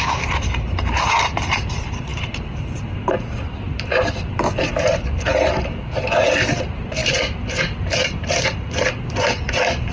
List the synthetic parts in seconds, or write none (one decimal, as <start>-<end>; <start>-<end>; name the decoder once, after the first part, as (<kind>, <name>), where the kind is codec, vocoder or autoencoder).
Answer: 0.0-9.9 (vocoder, BigVGAN v2)